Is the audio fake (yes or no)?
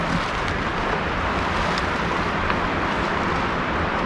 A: no